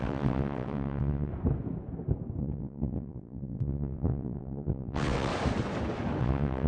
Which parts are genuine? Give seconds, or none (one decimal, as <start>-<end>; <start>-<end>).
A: 1.3-2.4; 5.3-6.2